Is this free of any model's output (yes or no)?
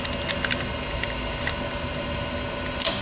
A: yes